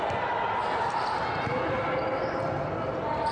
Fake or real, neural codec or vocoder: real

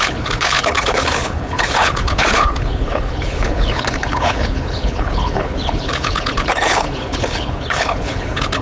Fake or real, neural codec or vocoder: fake, codec, HILCodec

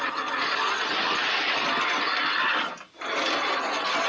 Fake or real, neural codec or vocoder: real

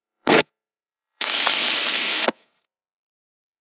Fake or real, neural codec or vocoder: fake, codec, SNAC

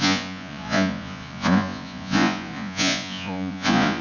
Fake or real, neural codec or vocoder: fake, vocoder, Vocos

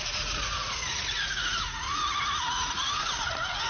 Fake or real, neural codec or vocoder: fake, vocoder, Vocos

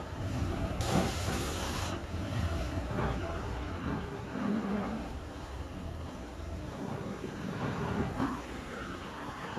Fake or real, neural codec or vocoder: fake, codec, SNAC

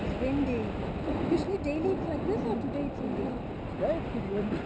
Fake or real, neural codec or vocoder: real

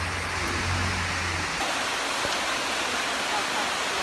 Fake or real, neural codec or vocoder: real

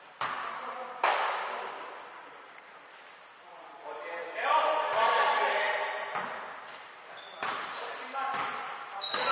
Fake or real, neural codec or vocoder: real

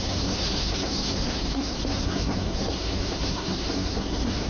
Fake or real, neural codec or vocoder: fake, codec, SNAC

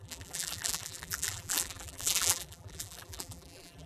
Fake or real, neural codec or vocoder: fake, vocoder, BigVGAN v2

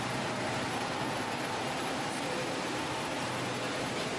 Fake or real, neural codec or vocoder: fake, vocoder, BigVGAN v2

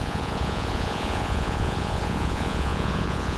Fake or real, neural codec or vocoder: fake, vocoder, Vocos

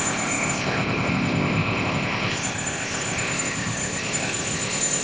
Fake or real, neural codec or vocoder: fake, codec, ZipCodec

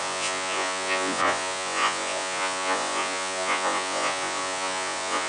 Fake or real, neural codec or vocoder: fake, vocoder, Vocos